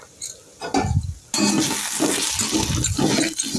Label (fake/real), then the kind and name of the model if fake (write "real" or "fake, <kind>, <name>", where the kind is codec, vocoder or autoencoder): real